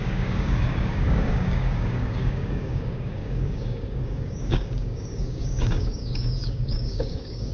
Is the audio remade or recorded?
remade